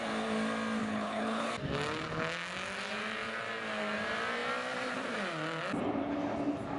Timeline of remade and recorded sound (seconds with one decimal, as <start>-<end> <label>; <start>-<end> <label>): 0.0-0.8 recorded; 0.8-1.5 remade; 1.5-6.8 recorded